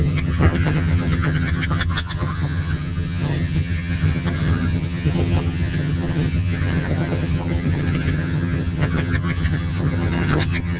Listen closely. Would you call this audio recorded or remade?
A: remade